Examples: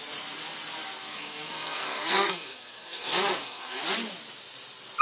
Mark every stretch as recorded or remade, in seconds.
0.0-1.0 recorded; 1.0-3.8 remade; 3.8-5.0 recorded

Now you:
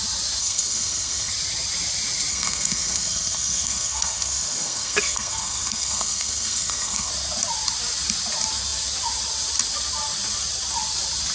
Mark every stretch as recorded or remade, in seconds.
0.0-0.4 recorded; 0.4-1.3 remade; 1.3-2.3 recorded; 2.3-7.1 remade; 7.1-11.3 recorded